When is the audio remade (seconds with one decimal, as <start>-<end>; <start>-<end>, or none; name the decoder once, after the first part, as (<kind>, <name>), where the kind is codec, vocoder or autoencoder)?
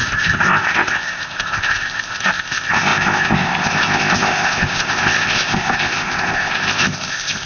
0.0-7.5 (codec, ZipCodec)